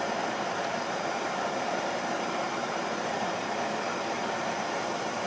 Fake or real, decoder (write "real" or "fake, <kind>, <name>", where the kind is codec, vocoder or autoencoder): fake, vocoder, BigVGAN v2